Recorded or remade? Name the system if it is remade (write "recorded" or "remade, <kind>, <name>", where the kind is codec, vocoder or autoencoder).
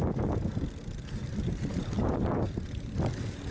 recorded